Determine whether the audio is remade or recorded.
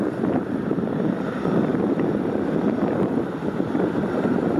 recorded